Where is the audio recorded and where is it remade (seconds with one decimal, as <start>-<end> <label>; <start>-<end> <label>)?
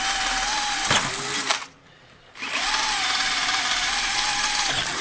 0.0-1.5 recorded; 1.5-4.1 remade; 4.1-5.0 recorded